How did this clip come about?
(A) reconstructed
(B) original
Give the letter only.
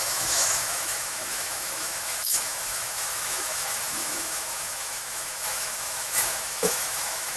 A